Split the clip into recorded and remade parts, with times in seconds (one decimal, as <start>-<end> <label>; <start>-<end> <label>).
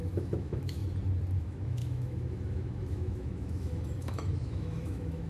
0.0-0.8 remade; 0.8-1.4 recorded; 1.4-5.3 remade